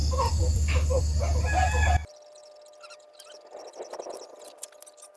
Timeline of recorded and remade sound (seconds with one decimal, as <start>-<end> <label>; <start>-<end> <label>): 0.0-1.0 remade; 1.0-2.0 recorded; 2.0-5.2 remade